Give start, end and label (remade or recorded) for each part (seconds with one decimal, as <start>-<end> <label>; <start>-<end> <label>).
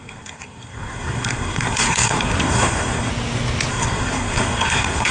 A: 0.0-3.1 remade; 3.1-3.7 recorded; 3.7-5.1 remade